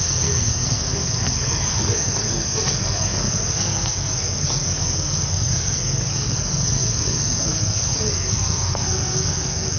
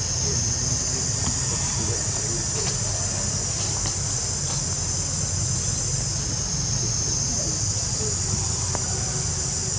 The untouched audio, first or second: second